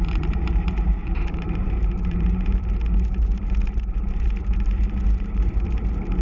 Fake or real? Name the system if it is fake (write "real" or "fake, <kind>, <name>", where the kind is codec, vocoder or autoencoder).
fake, vocoder, BigVGAN v2